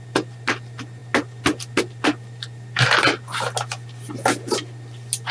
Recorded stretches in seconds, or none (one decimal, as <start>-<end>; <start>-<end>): 0.0-5.3

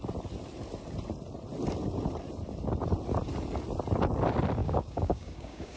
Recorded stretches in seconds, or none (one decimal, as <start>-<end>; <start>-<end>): 0.0-4.6

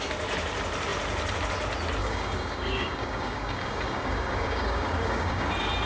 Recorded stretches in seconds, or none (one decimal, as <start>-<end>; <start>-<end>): 0.0-2.0; 5.5-5.9

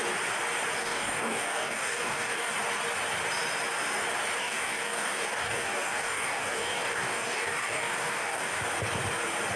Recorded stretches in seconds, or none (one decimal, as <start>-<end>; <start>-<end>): 0.0-0.8; 2.5-4.4; 8.6-9.6

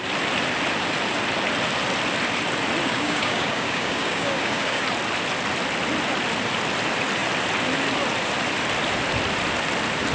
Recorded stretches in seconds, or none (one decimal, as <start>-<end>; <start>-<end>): 0.0-2.8; 4.8-10.1

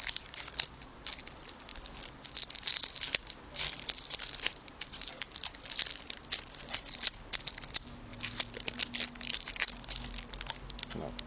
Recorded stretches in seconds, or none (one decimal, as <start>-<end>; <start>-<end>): 0.0-11.3